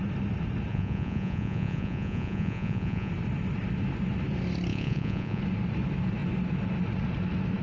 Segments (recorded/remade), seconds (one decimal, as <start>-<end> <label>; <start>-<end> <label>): 0.0-0.7 recorded; 0.7-3.1 remade; 3.1-4.7 recorded; 4.7-5.4 remade; 5.4-7.6 recorded